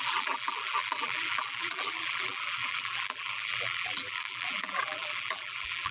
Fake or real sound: fake